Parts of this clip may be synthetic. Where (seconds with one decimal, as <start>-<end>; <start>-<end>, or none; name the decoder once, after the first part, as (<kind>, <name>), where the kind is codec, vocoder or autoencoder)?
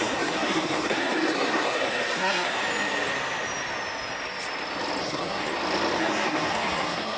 0.0-2.6 (codec, SNAC); 5.0-5.5; 6.0-7.2